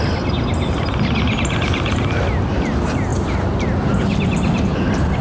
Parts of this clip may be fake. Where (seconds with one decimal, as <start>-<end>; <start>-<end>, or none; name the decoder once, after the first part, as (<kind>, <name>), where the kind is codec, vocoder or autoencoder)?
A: none